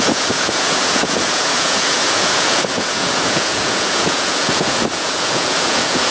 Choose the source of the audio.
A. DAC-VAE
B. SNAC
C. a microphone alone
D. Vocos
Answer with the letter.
D